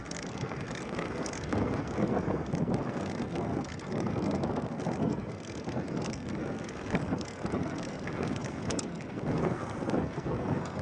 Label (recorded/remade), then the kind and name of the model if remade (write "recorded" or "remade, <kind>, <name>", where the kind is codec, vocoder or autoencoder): remade, codec, SNAC